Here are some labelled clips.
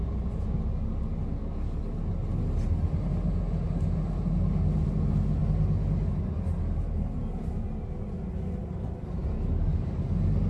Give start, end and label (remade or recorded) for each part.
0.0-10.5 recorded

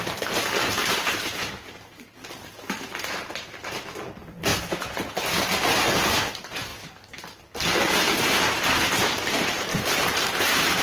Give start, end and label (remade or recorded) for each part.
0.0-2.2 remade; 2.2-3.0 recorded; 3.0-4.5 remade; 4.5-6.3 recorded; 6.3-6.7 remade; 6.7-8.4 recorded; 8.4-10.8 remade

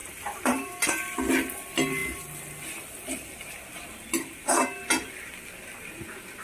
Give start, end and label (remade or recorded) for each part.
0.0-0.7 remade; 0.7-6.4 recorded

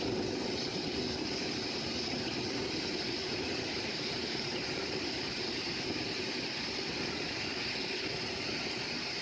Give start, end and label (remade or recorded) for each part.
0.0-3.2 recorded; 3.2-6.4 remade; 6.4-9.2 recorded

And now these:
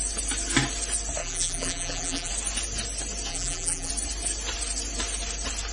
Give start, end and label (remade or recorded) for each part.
0.0-1.2 recorded; 1.2-2.3 remade; 2.3-3.3 recorded; 3.3-3.9 remade; 3.9-5.7 recorded

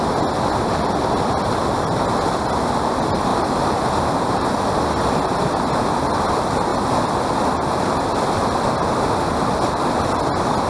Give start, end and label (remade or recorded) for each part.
0.0-3.3 recorded; 3.3-4.6 remade; 4.6-10.7 recorded